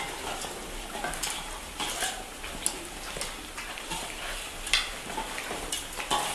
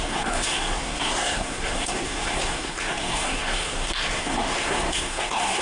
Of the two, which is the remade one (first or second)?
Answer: second